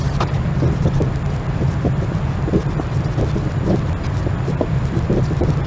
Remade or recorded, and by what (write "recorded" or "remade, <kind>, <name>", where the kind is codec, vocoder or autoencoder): recorded